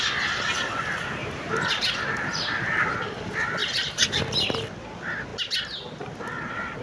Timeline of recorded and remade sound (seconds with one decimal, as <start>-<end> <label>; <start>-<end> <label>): 0.0-1.2 recorded; 1.2-3.0 remade; 3.0-3.6 recorded; 3.6-4.2 remade; 4.2-6.8 recorded